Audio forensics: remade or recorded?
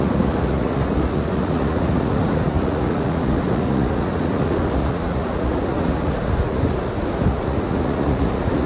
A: remade